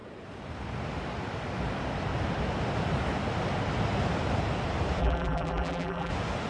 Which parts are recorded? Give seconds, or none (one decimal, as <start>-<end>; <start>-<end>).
0.0-5.0; 6.1-6.5